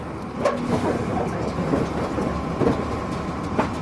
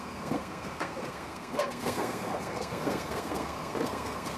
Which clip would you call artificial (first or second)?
second